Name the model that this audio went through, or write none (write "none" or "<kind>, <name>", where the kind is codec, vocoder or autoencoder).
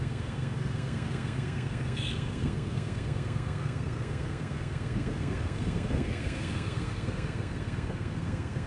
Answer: codec, SNAC